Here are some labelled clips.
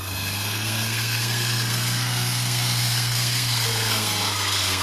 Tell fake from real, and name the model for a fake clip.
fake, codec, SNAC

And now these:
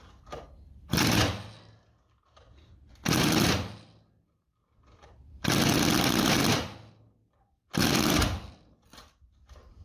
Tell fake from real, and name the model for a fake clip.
real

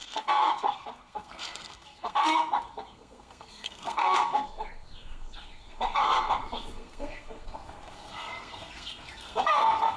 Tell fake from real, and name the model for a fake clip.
fake, codec, SNAC